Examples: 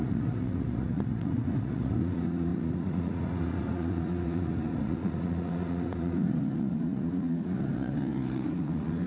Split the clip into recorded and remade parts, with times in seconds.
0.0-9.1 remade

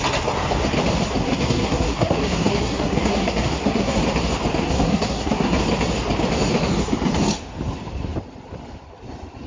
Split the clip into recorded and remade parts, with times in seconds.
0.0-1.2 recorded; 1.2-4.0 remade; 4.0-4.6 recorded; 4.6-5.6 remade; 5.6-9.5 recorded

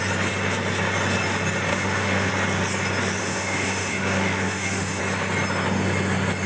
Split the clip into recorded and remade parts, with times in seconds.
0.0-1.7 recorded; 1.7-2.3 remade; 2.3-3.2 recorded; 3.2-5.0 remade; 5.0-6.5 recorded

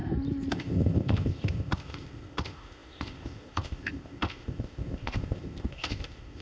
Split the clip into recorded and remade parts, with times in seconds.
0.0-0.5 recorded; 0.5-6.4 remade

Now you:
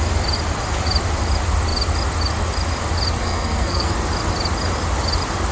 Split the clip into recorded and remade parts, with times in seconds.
0.0-3.2 recorded; 3.2-3.9 remade; 3.9-5.5 recorded